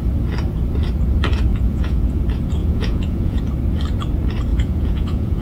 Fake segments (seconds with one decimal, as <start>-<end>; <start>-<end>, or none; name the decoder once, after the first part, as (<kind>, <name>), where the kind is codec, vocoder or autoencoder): 1.5-2.2 (vocoder, Vocos); 2.6-3.4; 4.5-5.4